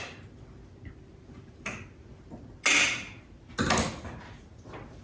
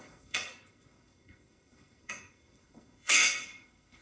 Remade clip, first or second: second